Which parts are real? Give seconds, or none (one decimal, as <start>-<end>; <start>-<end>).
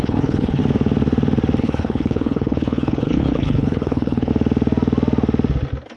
0.6-1.6; 4.3-6.0